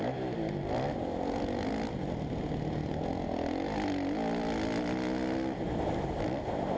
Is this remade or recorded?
recorded